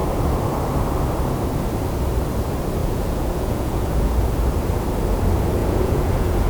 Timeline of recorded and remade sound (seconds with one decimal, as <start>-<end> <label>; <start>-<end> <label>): 0.0-2.8 recorded; 2.8-4.1 remade; 4.1-5.6 recorded; 5.6-6.5 remade